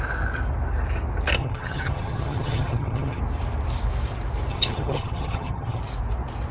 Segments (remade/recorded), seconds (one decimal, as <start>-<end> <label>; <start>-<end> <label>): 0.0-1.4 recorded; 1.4-3.2 remade; 3.2-4.5 recorded; 4.5-5.8 remade; 5.8-6.5 recorded